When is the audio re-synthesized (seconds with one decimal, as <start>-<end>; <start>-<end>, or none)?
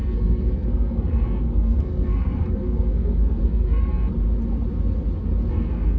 0.0-3.9; 5.5-6.0